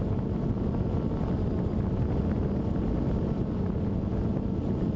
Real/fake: real